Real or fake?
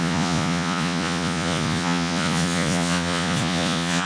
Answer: fake